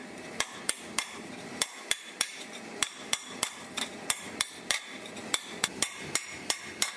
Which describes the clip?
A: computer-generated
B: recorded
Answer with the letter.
A